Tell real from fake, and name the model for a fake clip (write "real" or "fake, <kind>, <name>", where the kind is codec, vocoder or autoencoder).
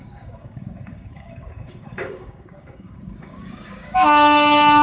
fake, codec, DAC